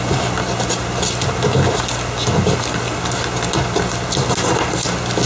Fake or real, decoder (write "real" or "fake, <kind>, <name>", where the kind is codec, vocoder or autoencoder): real